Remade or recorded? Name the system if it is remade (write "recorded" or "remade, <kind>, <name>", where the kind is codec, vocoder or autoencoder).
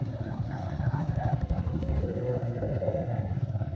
remade, codec, SNAC